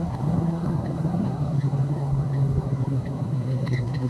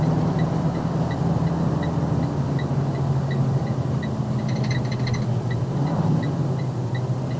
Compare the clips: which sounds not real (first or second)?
first